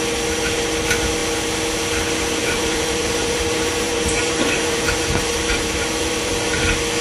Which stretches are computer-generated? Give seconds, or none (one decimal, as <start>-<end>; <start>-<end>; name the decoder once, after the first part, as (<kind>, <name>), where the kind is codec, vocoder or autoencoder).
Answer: 2.4-6.6 (vocoder, BigVGAN v2)